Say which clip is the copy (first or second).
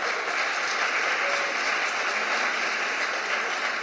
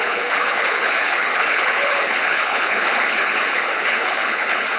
second